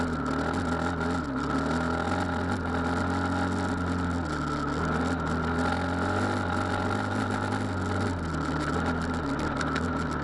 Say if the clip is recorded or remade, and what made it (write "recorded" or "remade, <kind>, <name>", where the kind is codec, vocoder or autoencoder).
recorded